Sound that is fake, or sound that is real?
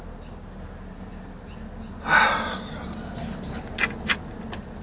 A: real